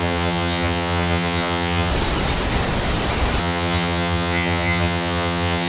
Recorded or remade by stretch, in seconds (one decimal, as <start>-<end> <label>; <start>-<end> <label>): 0.0-1.9 remade; 1.9-3.4 recorded; 3.4-5.7 remade

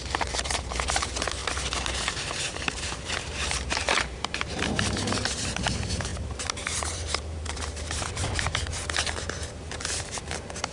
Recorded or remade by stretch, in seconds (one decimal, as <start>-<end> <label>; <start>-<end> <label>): 0.0-10.7 remade

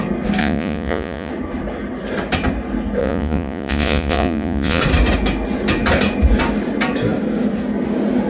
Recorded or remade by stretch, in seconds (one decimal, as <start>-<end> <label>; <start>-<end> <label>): 0.0-0.4 recorded; 0.4-1.3 remade; 1.3-3.0 recorded; 3.0-4.8 remade; 4.8-8.3 recorded

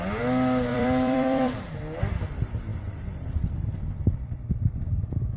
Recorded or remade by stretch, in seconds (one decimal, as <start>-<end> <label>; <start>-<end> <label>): 0.0-0.7 recorded; 0.7-2.0 remade; 2.0-2.7 recorded; 2.7-4.8 remade; 4.8-5.4 recorded

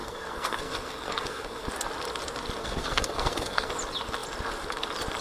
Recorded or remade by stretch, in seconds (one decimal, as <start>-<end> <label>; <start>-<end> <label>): 0.0-1.7 remade; 1.7-2.6 recorded; 2.6-3.7 remade; 3.7-5.2 recorded

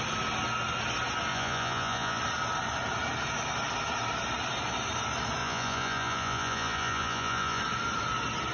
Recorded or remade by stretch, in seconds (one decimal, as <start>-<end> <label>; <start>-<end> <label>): 0.0-1.3 recorded; 1.3-2.2 remade; 2.2-5.4 recorded; 5.4-7.6 remade; 7.6-8.5 recorded